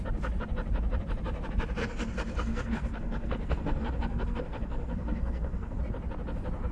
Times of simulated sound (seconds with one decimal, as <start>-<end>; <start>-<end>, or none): 1.8-5.8